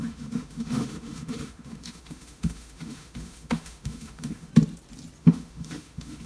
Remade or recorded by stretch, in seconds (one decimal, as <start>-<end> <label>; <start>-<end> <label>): 0.0-4.5 remade; 4.5-5.2 recorded; 5.2-6.3 remade